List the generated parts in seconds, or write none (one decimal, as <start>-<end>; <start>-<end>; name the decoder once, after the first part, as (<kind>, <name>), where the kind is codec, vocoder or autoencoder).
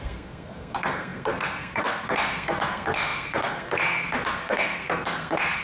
0.0-5.6 (codec, SNAC)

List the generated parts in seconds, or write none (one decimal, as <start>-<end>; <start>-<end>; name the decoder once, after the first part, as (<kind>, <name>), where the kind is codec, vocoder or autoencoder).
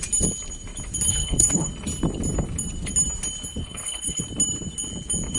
1.1-1.7 (codec, HILCodec); 3.6-4.2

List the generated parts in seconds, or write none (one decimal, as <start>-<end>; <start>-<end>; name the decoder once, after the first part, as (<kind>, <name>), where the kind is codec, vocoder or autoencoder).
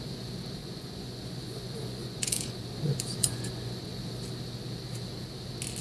0.6-2.6 (vocoder, Vocos); 3.2-3.9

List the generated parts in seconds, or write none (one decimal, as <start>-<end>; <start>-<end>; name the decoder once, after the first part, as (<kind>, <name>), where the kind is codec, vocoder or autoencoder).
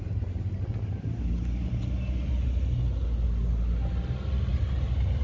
none